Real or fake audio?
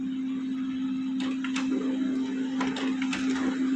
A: real